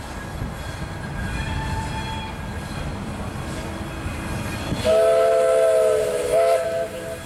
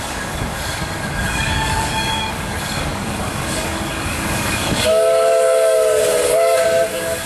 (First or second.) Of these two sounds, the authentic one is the first